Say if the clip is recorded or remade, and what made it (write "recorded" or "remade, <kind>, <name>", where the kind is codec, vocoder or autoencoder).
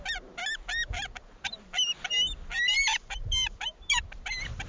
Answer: recorded